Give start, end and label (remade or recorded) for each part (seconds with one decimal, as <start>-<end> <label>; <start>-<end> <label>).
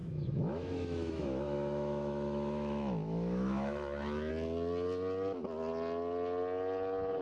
0.0-4.3 remade; 4.3-7.2 recorded